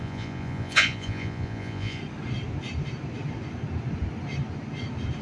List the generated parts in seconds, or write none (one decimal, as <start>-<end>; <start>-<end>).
0.0-2.0